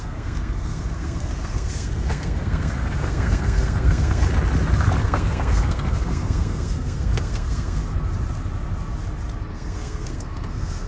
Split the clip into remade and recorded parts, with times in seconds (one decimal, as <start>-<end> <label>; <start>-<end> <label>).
0.0-4.2 remade; 4.2-5.0 recorded; 5.0-7.8 remade; 7.8-9.5 recorded; 9.5-10.9 remade